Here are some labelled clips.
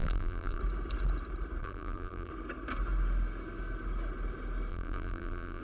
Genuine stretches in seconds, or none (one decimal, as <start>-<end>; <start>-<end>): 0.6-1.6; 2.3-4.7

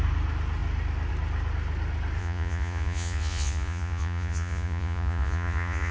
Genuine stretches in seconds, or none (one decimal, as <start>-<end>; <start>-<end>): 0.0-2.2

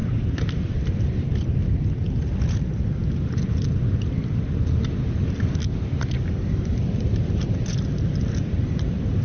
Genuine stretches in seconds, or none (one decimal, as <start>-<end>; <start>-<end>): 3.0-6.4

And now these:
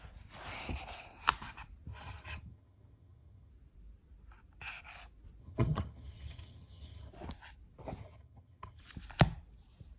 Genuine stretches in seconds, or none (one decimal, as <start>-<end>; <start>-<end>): 0.0-1.9; 3.5-5.4; 7.1-8.0; 8.8-10.0

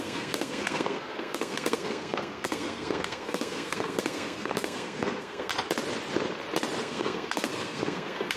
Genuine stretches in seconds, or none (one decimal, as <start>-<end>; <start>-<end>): 5.5-6.8

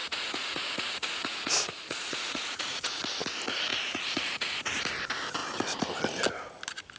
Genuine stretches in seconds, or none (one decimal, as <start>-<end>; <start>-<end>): 3.0-3.7; 4.8-7.0